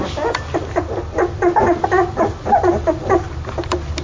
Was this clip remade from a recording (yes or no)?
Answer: no